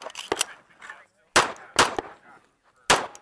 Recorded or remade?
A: recorded